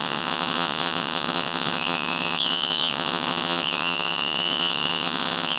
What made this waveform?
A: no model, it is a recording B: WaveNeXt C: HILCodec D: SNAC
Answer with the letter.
B